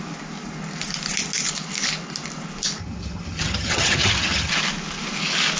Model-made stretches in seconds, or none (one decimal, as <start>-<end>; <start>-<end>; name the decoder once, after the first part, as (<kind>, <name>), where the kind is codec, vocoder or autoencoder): 2.8-4.5 (vocoder, HiFi-GAN)

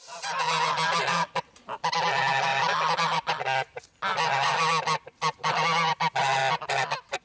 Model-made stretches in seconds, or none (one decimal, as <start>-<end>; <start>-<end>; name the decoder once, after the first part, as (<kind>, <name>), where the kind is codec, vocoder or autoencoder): none

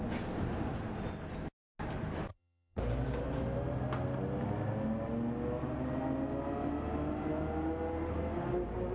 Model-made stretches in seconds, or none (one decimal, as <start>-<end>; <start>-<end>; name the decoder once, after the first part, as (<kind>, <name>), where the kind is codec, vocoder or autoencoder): 2.3-2.8 (vocoder, HiFi-GAN)